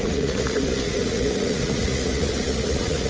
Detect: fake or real fake